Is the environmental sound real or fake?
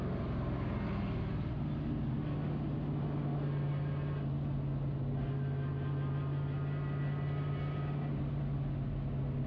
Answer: real